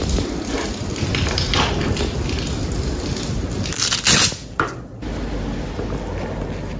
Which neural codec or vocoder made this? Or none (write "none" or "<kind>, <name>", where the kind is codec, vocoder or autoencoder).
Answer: none